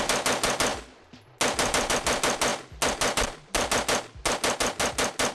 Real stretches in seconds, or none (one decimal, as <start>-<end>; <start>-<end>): 0.0-5.3